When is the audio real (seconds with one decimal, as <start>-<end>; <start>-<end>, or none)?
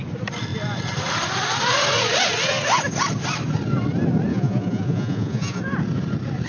0.0-4.3; 5.6-6.5